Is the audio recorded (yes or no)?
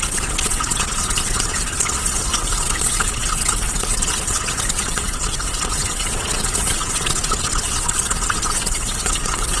no